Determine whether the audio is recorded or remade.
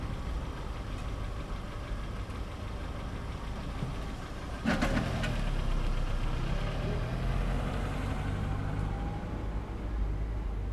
recorded